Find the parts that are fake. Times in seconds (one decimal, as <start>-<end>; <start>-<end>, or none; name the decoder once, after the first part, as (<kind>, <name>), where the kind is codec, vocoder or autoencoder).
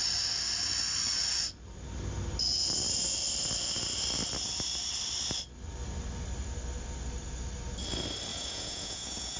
8.3-9.4 (vocoder, Vocos)